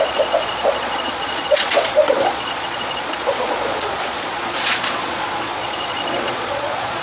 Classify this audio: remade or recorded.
remade